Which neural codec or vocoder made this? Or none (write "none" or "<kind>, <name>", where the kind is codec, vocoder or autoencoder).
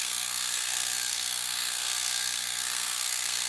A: codec, SNAC